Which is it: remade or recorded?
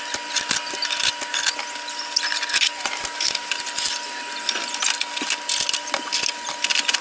recorded